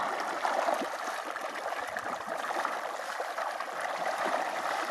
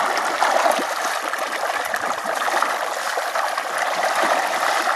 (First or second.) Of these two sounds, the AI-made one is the first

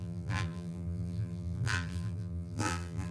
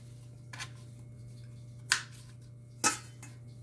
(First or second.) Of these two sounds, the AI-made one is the first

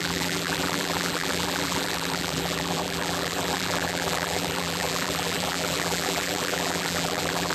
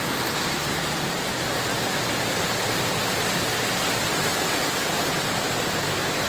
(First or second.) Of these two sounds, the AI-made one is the first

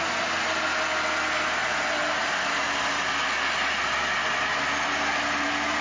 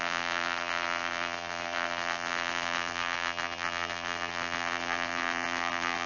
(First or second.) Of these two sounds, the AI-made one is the second